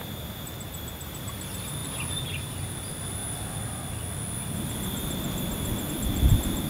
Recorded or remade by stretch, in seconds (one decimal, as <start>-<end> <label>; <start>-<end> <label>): 0.0-3.2 remade; 3.2-5.9 recorded; 5.9-6.7 remade